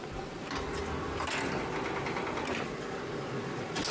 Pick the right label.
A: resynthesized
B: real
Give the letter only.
B